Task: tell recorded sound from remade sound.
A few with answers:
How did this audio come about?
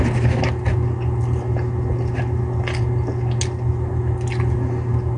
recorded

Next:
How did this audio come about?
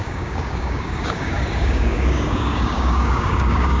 remade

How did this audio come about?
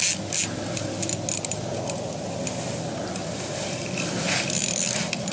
recorded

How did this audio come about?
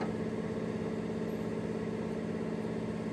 recorded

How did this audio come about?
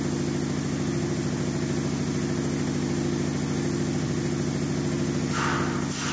recorded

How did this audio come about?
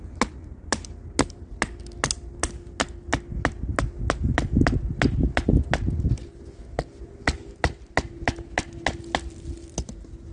recorded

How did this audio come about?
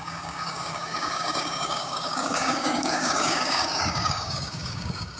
remade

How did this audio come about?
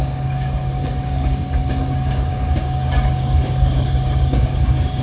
remade